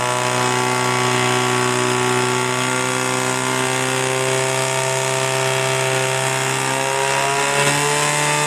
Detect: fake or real real